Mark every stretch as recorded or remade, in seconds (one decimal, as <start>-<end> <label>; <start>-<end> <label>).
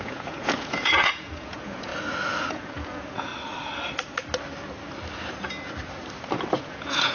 0.0-1.9 remade; 1.9-2.5 recorded; 2.5-3.3 remade; 3.3-6.6 recorded; 6.6-7.1 remade